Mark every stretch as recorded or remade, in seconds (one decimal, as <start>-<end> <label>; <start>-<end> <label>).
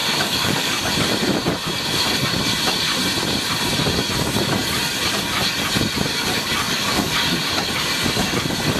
0.0-0.9 remade; 0.9-6.1 recorded; 6.1-7.1 remade; 7.1-8.8 recorded